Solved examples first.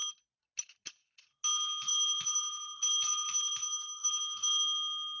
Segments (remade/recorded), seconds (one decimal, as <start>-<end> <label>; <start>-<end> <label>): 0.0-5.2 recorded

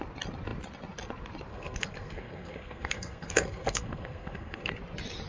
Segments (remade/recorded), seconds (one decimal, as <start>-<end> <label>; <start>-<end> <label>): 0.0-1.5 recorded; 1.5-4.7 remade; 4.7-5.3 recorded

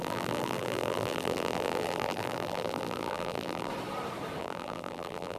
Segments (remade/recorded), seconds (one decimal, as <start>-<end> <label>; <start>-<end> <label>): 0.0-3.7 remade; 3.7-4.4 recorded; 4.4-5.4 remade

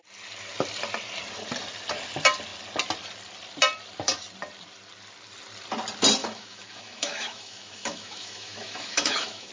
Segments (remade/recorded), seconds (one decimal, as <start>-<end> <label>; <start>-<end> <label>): 0.0-6.2 recorded; 6.2-9.5 remade

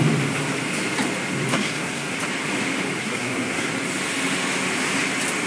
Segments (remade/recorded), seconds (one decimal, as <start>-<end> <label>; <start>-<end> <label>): 0.0-1.5 recorded; 1.5-2.2 remade; 2.2-3.0 recorded; 3.0-3.7 remade; 3.7-5.5 recorded